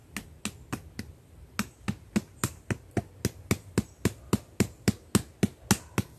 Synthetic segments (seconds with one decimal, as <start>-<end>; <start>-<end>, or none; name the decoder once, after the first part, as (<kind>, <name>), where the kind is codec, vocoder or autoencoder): none